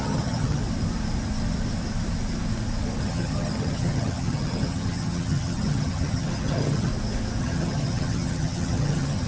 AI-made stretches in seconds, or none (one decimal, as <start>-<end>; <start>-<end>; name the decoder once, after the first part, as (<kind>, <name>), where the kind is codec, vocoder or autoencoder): 0.0-0.6 (vocoder, HiFi-GAN); 3.0-6.9; 7.4-9.3